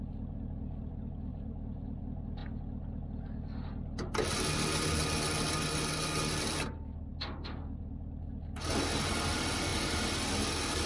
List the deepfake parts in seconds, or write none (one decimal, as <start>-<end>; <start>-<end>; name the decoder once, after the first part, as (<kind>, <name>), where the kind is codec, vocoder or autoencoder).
none